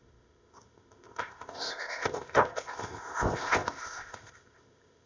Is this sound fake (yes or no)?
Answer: yes